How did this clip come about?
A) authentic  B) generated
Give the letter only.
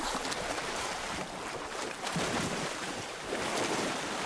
B